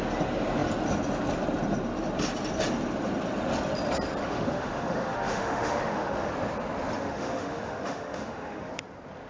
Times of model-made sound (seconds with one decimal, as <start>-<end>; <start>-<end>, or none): 4.2-6.3; 7.0-8.7